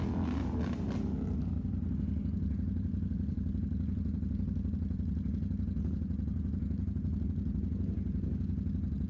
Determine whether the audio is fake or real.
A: real